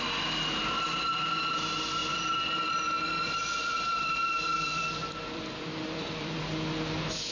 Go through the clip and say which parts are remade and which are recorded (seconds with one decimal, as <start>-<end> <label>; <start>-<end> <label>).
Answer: 0.0-0.6 recorded; 0.6-1.3 remade; 1.3-2.0 recorded; 2.0-6.4 remade; 6.4-7.3 recorded